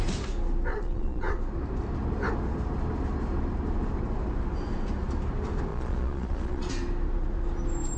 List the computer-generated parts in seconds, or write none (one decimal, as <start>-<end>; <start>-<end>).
0.7-1.4; 5.7-6.7